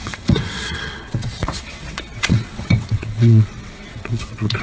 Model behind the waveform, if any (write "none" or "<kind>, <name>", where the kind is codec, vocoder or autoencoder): vocoder, WaveNeXt